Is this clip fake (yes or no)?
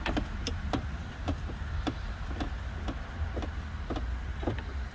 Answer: no